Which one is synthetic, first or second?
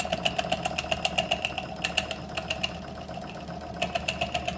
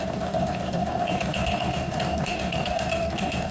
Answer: second